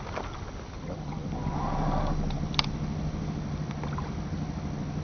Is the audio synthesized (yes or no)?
no